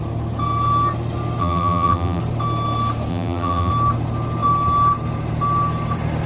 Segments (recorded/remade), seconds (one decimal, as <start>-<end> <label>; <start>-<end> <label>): 0.0-1.4 recorded; 1.4-2.2 remade; 2.2-3.1 recorded; 3.1-3.7 remade; 3.7-6.3 recorded